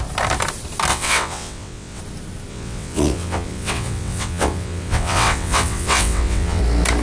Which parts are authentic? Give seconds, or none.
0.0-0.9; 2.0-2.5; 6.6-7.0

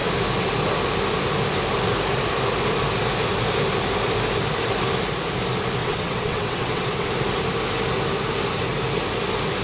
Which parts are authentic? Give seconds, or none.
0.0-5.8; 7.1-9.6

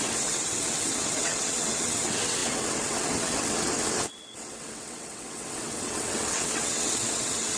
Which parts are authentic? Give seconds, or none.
none